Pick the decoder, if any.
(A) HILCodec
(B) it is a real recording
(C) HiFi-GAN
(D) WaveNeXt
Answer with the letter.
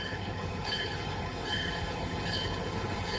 A